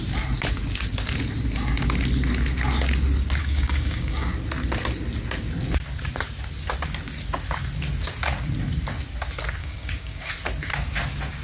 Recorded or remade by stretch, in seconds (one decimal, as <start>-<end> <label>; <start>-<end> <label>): 0.0-3.4 recorded; 3.4-4.3 remade; 4.3-9.6 recorded; 9.6-10.3 remade; 10.3-11.4 recorded